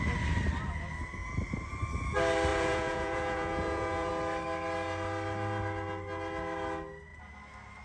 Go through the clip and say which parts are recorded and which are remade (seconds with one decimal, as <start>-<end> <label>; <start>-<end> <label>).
0.0-2.5 recorded; 2.5-4.1 remade; 4.1-7.8 recorded